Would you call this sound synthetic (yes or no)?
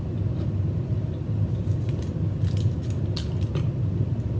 no